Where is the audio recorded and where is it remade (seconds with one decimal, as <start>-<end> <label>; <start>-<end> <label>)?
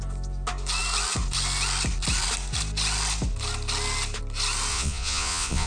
0.0-4.7 recorded; 4.7-5.7 remade